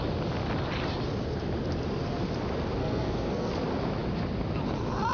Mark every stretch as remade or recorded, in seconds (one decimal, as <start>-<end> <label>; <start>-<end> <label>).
0.0-2.8 recorded; 2.8-3.5 remade; 3.5-5.1 recorded